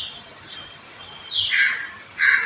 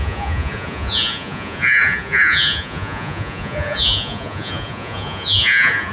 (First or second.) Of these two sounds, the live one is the first